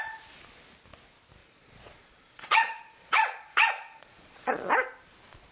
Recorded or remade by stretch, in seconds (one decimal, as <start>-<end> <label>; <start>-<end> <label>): 0.0-1.4 recorded; 1.4-4.7 remade; 4.7-5.5 recorded